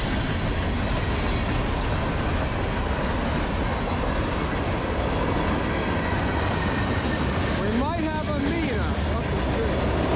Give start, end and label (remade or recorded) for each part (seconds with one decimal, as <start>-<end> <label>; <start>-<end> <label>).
0.0-5.8 recorded; 5.8-6.4 remade; 6.4-10.2 recorded